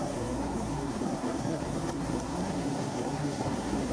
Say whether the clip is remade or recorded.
remade